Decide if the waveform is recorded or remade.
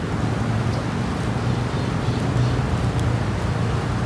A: recorded